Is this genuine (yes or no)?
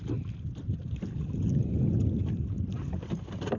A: yes